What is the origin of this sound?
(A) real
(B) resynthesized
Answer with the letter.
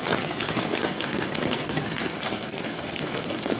B